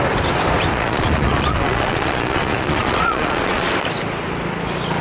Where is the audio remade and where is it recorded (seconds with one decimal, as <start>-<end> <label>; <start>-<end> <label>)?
0.0-0.7 recorded; 0.7-3.7 remade; 3.7-5.0 recorded